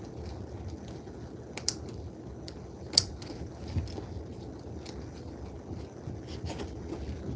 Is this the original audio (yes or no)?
yes